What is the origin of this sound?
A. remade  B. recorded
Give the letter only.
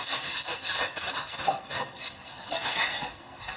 A